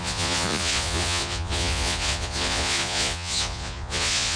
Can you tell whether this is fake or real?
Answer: fake